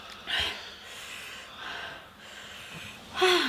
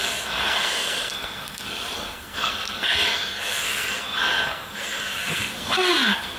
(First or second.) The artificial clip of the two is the second